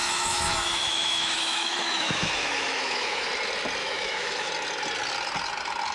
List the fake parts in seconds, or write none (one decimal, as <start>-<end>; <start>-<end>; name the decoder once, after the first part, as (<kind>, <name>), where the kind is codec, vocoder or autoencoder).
0.0-3.3 (autoencoder, DAC-VAE); 3.8-4.5